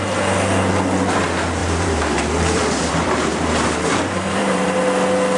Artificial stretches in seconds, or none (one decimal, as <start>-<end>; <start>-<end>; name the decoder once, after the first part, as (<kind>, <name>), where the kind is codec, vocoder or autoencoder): 1.6-4.8 (vocoder, BigVGAN v2)